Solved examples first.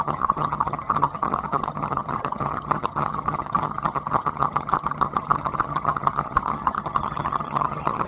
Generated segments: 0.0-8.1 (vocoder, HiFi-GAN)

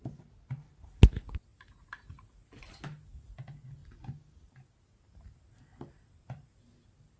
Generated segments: none

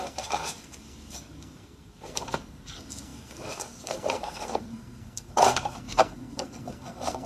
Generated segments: 0.0-7.3 (codec, SNAC)

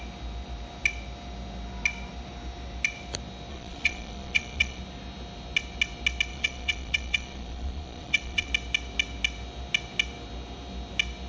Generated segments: 3.5-4.8 (vocoder, Vocos); 6.3-8.5

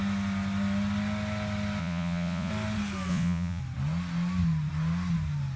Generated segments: 1.8-2.5 (vocoder, Vocos); 3.1-3.6

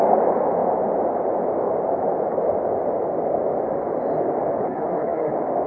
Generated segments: 4.6-5.3 (codec, SNAC)